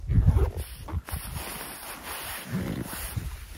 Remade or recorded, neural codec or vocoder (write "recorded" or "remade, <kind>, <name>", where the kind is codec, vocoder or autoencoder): recorded